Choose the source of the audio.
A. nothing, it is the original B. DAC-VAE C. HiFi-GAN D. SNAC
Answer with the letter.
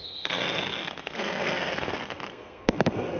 D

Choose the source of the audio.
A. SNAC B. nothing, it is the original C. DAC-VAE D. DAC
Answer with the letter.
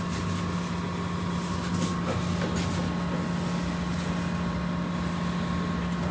B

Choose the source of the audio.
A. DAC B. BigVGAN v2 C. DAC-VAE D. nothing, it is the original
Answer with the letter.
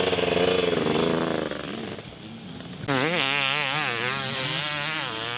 D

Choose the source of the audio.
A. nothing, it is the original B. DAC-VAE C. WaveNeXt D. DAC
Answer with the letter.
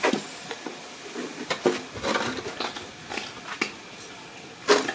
A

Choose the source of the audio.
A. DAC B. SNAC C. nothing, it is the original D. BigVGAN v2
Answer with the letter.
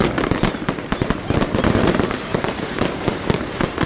D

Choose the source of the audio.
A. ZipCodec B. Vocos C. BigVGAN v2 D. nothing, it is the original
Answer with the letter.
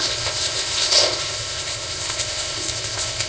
A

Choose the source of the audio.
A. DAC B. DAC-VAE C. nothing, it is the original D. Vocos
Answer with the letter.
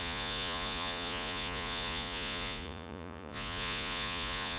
D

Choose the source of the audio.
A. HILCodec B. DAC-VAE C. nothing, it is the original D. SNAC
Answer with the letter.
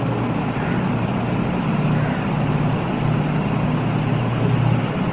C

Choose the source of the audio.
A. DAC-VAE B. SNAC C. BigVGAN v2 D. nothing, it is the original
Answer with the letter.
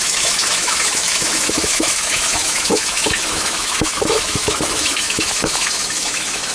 A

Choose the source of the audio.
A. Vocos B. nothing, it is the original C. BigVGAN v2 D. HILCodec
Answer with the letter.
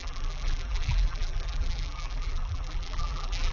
C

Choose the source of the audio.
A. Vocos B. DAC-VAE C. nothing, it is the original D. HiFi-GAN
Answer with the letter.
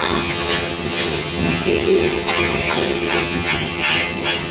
D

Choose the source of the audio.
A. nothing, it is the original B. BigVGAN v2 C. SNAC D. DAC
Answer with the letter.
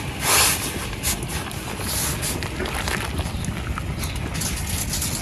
A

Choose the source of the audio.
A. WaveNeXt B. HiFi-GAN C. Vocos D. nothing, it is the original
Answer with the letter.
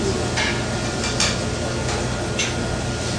D